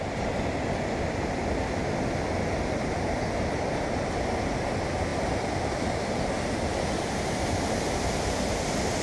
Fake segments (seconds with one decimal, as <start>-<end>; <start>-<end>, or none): 5.1-6.1; 6.7-7.9